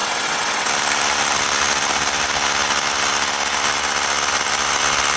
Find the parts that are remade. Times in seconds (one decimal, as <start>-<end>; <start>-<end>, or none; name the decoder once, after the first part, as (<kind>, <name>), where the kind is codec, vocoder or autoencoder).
0.0-0.7 (vocoder, WaveNeXt)